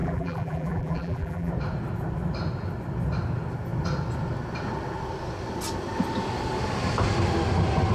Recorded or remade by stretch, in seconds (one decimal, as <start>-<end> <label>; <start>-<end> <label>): 0.0-1.5 remade; 1.5-7.9 recorded